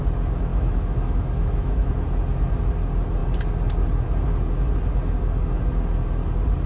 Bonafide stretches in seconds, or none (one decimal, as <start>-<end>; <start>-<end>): 0.0-0.5; 1.9-6.7